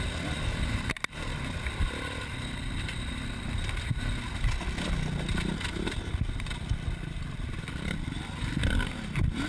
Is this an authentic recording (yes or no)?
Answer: yes